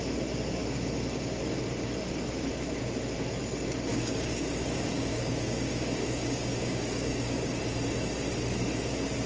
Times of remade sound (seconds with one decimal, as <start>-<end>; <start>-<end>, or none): 3.9-7.6